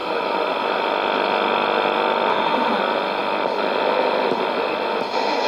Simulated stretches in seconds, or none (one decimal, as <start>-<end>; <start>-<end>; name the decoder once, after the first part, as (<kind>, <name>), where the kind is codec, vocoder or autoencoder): 2.3-2.8 (autoencoder, DAC-VAE)